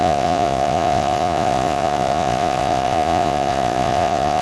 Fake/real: fake